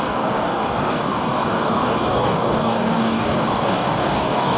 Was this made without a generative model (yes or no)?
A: no